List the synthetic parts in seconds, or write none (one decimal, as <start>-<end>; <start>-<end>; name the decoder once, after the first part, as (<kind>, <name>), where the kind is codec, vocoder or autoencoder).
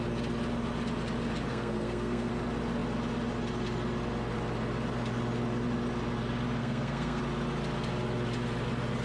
1.5-2.3 (codec, SNAC); 6.6-7.2